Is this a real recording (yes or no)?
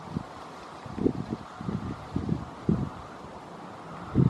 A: yes